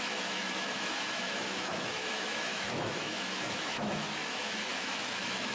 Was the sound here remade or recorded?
remade